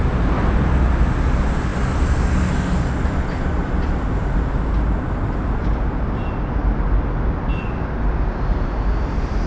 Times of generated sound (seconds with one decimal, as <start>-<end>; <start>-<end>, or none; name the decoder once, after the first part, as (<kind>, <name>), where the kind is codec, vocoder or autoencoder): none